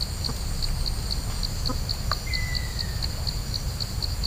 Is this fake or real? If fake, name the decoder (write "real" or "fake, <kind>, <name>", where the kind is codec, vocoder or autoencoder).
real